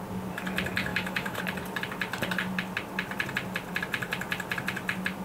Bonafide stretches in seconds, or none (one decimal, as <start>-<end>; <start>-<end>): 0.0-0.9; 1.4-5.2